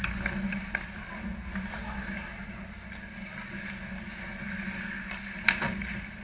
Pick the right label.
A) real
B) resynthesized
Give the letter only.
A